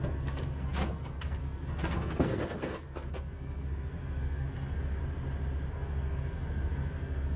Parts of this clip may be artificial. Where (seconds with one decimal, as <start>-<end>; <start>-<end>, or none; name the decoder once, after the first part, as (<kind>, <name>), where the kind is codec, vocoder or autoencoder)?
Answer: 0.0-5.0 (codec, SNAC); 5.7-7.4